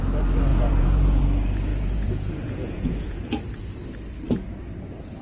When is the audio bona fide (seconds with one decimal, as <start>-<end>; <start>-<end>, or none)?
0.0-0.5; 1.2-1.7; 3.4-5.2